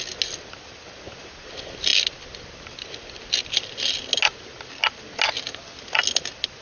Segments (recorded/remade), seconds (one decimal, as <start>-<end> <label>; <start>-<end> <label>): 0.0-6.6 recorded